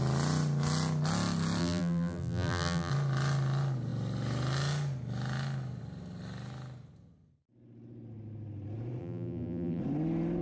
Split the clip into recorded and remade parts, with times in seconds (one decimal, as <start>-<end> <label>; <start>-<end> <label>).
0.0-1.6 recorded; 1.6-2.9 remade; 2.9-9.0 recorded; 9.0-9.8 remade; 9.8-10.4 recorded